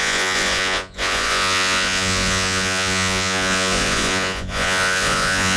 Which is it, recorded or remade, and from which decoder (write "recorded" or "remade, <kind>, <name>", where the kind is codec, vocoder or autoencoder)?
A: remade, vocoder, Vocos